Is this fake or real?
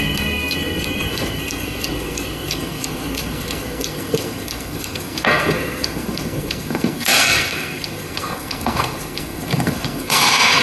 fake